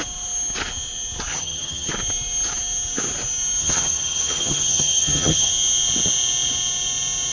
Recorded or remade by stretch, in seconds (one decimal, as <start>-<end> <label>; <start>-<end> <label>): 0.0-1.3 recorded; 1.3-1.9 remade; 1.9-3.6 recorded; 3.6-5.5 remade; 5.5-7.3 recorded